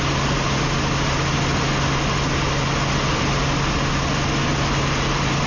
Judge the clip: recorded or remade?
recorded